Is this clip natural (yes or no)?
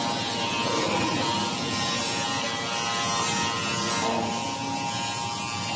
yes